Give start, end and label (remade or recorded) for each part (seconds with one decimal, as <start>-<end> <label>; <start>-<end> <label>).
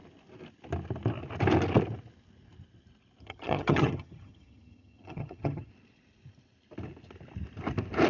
0.0-3.2 recorded; 3.2-5.7 remade; 5.7-8.1 recorded